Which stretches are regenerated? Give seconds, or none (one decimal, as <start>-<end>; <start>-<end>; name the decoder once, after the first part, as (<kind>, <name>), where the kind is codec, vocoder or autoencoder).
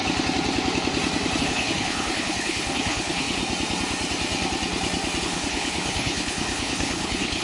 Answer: 1.4-3.4 (codec, HILCodec); 5.2-7.4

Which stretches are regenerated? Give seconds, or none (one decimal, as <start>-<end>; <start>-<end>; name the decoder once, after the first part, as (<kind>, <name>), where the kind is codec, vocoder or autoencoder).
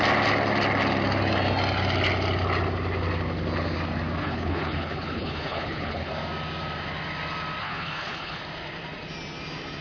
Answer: 4.2-6.1 (codec, HILCodec); 7.6-8.4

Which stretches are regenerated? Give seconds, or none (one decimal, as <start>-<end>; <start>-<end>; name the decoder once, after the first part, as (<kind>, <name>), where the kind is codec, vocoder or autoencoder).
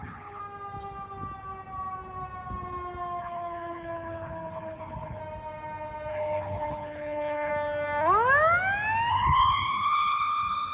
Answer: 0.0-0.4 (codec, HILCodec); 3.2-5.2; 6.1-7.5; 9.1-10.7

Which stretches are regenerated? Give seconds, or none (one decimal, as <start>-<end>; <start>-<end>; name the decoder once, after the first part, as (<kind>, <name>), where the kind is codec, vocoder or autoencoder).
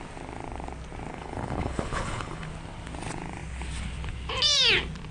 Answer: 1.1-2.5 (codec, HILCodec)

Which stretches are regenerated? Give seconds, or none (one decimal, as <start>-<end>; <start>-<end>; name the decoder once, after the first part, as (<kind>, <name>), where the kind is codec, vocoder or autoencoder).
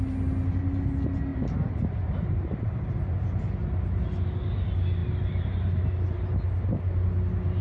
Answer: none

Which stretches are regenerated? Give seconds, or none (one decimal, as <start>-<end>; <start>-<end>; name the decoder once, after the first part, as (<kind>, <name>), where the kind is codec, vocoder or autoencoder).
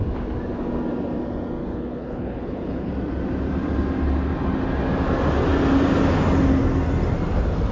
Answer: 1.6-2.9 (codec, HILCodec)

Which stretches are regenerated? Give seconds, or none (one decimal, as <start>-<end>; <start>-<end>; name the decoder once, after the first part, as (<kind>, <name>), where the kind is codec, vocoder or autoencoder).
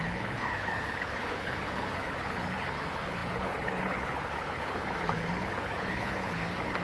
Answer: 0.0-6.8 (codec, HILCodec)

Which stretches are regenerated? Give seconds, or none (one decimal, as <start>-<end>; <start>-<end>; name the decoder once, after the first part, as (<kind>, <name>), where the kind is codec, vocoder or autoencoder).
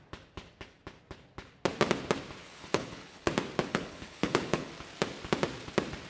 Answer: 2.4-3.3 (codec, HILCodec); 3.7-4.7